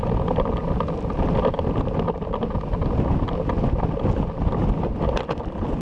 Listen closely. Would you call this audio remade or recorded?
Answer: recorded